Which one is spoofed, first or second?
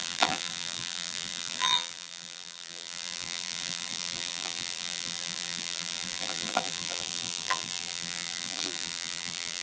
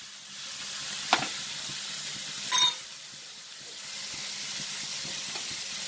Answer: first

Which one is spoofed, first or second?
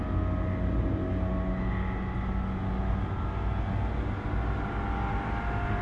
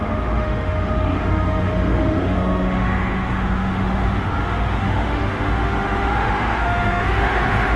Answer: second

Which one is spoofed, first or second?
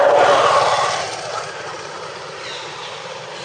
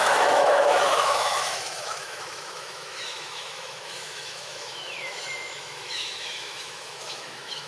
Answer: second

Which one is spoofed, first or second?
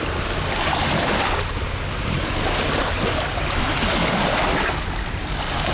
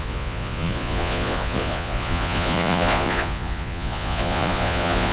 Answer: second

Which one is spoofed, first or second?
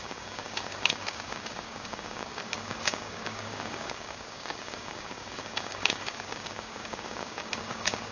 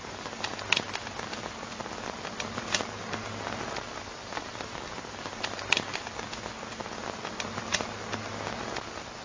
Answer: first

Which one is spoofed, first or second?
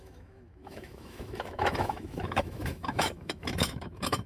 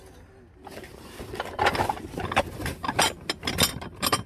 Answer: first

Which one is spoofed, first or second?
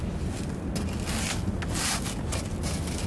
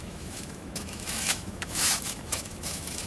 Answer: second